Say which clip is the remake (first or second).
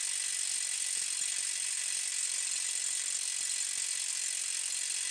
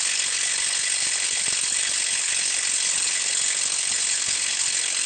second